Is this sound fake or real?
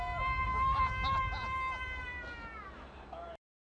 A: real